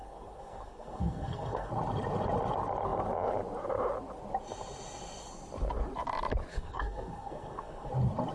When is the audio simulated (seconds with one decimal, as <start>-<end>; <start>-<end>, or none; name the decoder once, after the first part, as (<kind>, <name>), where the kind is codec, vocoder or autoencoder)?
0.0-1.7 (codec, SNAC); 6.5-7.9